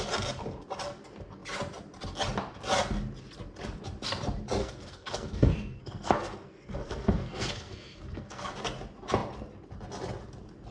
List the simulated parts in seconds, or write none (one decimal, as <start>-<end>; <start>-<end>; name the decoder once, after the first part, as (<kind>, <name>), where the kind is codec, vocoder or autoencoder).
4.6-8.5 (codec, SNAC)